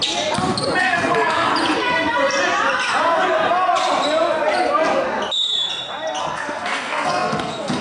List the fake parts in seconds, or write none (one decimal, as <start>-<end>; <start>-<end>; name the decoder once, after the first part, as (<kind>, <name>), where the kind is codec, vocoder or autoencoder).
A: 0.8-1.5 (codec, SNAC); 6.2-7.8